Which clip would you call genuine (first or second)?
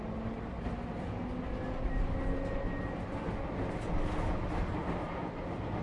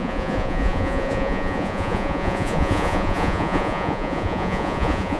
first